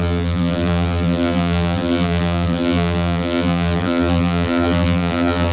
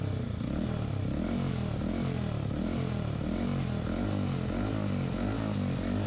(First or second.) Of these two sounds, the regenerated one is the first